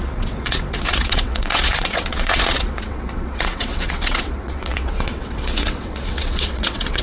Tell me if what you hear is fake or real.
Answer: fake